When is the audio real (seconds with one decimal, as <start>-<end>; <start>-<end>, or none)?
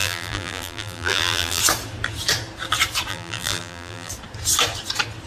1.6-3.1; 4.1-5.3